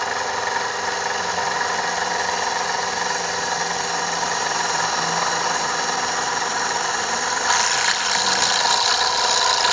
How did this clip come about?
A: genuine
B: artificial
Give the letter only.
A